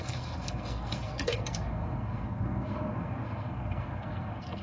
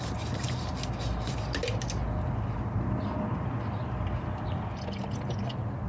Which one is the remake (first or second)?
first